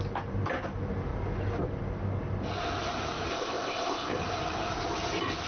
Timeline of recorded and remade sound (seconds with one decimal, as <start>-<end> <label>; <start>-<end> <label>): 0.0-3.3 recorded; 3.3-4.2 remade; 4.2-5.5 recorded